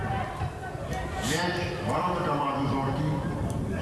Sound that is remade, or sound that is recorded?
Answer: recorded